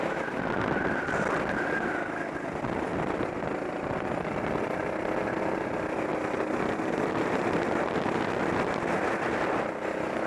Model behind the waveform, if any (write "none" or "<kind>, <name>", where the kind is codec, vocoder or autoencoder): none